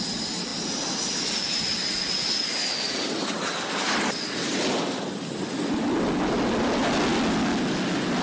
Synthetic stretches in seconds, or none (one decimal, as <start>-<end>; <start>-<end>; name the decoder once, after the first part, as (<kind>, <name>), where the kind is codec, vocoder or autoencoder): none

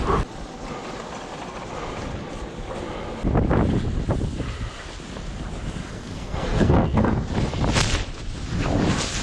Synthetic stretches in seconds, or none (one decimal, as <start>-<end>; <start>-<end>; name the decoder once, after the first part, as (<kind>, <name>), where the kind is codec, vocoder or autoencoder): 5.8-7.3 (codec, SNAC)